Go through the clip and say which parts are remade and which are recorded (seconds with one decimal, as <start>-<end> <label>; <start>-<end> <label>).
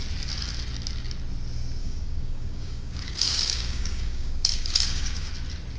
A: 0.0-1.8 recorded; 1.8-5.3 remade; 5.3-5.8 recorded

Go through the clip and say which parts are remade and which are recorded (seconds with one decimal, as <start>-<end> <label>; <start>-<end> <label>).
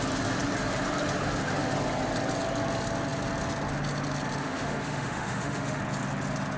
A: 0.0-4.4 recorded; 4.4-5.8 remade; 5.8-6.6 recorded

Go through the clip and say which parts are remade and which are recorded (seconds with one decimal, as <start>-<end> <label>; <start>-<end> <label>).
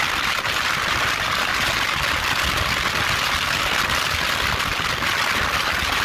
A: 0.0-6.0 recorded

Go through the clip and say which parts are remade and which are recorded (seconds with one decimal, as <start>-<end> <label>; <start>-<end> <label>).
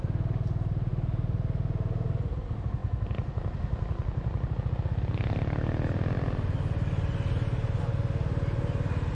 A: 0.0-9.1 recorded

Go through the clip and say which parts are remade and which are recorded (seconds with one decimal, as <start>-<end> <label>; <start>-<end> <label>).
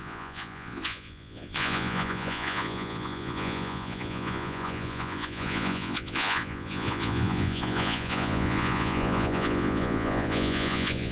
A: 0.0-11.1 remade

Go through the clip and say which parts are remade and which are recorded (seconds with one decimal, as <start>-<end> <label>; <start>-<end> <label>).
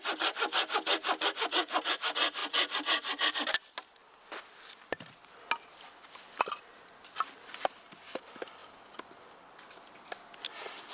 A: 0.0-10.9 recorded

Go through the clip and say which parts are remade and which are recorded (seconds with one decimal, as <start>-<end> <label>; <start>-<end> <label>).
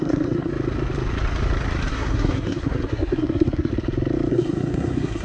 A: 0.0-0.5 remade; 0.5-1.9 recorded; 1.9-3.7 remade; 3.7-4.3 recorded; 4.3-5.2 remade